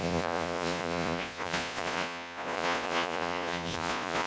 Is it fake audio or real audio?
fake